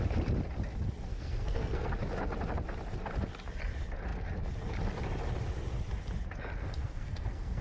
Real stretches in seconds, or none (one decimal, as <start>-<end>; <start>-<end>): 0.0-1.1; 1.9-6.6